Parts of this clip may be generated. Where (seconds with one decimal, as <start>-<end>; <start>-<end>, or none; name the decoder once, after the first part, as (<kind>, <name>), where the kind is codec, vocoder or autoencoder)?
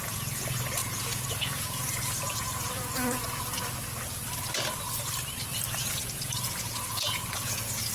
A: 0.0-3.6 (vocoder, Vocos); 5.8-7.9